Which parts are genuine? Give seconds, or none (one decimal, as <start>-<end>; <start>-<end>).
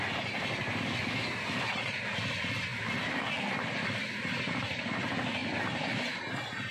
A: 0.0-6.7